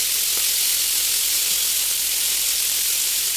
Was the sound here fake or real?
real